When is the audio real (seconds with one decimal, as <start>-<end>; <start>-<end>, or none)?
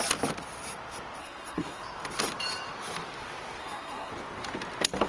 0.0-1.2; 1.8-3.6; 4.1-5.1